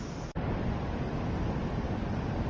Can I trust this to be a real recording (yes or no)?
yes